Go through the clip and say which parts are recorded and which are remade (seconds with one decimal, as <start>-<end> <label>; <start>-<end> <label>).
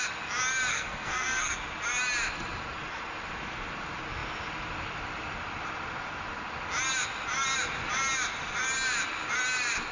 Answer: 0.0-0.7 recorded; 0.7-1.5 remade; 1.5-9.9 recorded